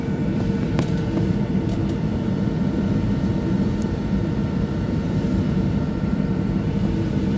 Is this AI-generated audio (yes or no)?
yes